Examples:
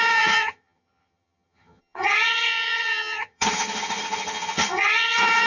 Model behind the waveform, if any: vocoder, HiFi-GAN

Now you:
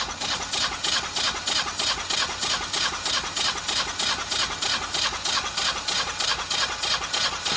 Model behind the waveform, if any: none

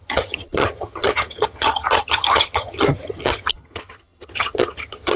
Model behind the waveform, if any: vocoder, HiFi-GAN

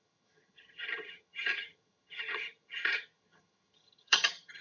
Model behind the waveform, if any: vocoder, HiFi-GAN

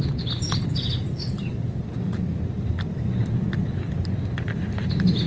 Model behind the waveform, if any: none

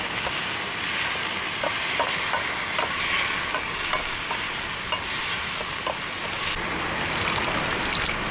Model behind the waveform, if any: none